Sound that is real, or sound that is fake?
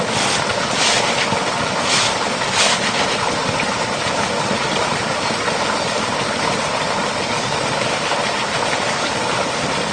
fake